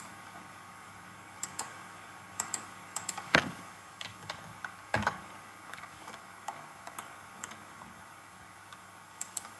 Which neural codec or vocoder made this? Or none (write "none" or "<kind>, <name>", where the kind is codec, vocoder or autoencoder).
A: codec, DAC